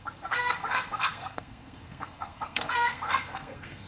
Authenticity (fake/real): fake